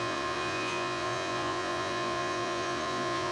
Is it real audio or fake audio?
fake